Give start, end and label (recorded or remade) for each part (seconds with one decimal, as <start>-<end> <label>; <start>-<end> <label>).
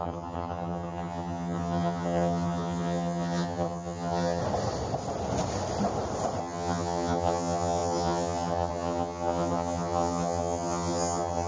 0.0-4.4 remade; 4.4-6.4 recorded; 6.4-11.5 remade